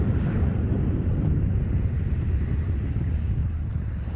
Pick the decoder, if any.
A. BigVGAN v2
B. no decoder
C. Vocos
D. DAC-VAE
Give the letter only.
B